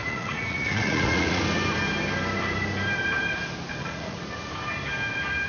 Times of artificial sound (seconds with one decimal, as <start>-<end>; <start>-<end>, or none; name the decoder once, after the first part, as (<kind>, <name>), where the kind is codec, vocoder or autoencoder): 0.0-1.4 (vocoder, Vocos); 3.7-4.2